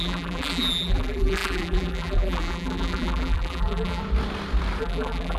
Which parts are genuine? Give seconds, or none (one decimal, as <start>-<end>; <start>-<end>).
4.0-4.8